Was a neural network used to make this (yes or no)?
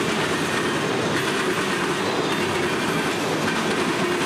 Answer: no